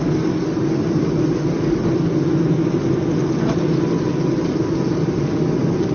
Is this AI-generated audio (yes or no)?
no